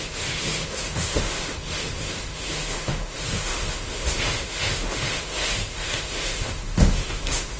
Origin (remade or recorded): remade